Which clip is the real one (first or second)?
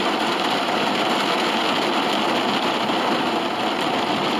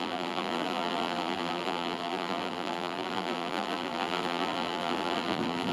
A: first